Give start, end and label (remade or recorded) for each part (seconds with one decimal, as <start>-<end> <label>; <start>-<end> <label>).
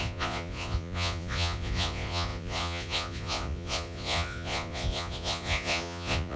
0.0-6.4 remade